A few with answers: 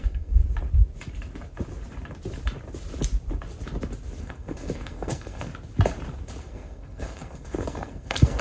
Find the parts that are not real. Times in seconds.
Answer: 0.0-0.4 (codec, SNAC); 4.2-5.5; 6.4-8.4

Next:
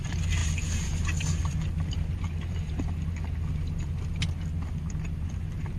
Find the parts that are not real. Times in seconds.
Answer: none

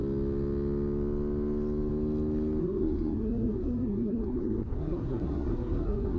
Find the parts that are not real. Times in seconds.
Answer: 2.6-6.2 (codec, SNAC)

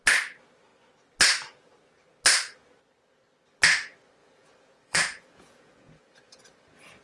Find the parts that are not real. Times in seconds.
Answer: 4.2-6.4 (vocoder, Vocos)